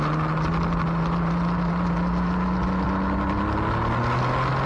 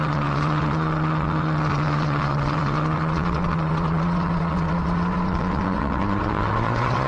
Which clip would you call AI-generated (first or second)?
second